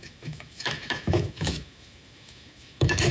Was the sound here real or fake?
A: fake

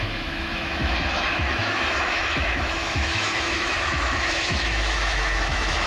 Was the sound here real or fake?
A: fake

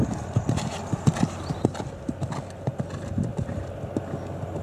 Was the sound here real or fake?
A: real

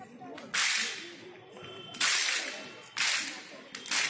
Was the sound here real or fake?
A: real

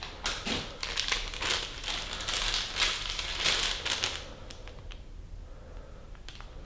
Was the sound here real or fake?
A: real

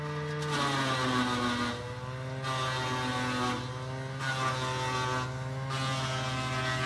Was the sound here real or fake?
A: real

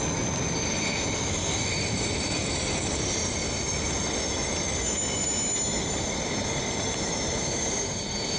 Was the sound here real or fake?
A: real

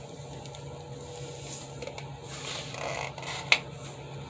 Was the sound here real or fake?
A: real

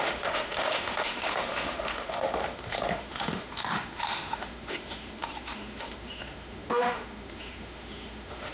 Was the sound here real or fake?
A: fake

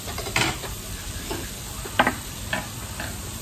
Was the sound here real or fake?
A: real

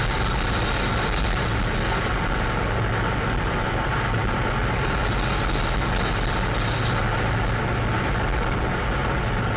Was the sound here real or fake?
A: real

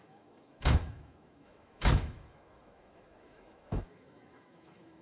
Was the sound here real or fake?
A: fake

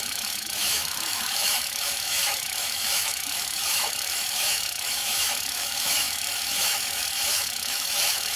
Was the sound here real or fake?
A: fake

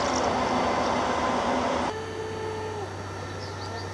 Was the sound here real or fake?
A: real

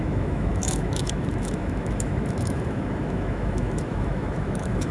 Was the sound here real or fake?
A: fake